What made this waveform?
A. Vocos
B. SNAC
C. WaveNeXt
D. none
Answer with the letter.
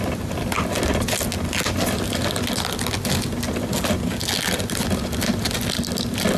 D